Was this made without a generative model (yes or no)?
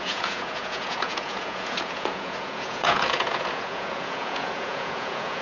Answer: no